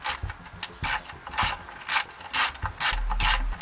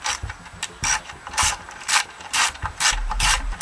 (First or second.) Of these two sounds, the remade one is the second